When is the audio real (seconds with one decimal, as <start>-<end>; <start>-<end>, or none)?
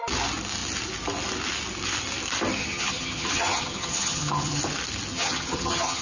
0.0-2.6; 4.6-5.1